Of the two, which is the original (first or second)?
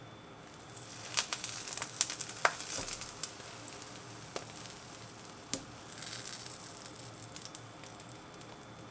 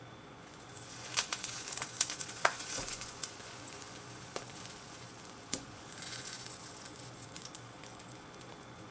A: first